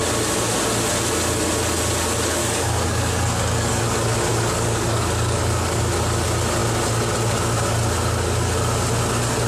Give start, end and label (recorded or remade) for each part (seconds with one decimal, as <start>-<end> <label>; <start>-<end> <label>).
0.0-2.4 recorded; 2.4-3.8 remade; 3.8-4.3 recorded; 4.3-5.8 remade; 5.8-9.5 recorded